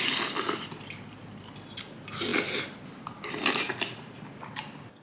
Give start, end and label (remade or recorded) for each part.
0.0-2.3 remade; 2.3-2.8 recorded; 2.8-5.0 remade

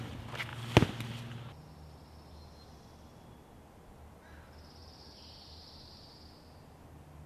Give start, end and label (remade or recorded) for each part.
0.0-4.8 recorded; 4.8-5.6 remade; 5.6-7.3 recorded

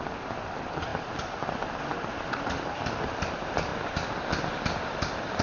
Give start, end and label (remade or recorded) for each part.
0.0-5.4 recorded